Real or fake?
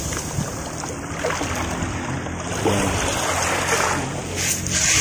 real